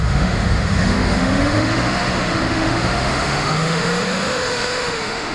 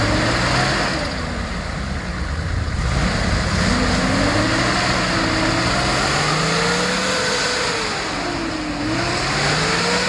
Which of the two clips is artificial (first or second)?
first